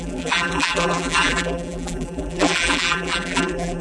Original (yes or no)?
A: no